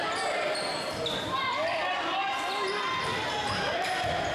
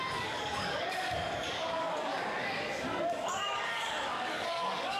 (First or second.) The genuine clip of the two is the first